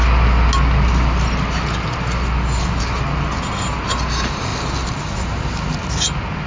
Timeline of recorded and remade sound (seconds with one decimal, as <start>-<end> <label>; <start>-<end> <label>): 0.0-6.5 recorded